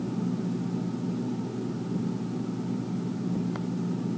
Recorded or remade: recorded